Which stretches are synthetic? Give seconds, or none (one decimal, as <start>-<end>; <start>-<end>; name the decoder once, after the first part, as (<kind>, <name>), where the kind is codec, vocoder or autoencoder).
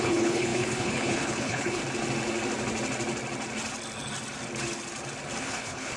0.0-1.8 (codec, HILCodec); 5.4-6.0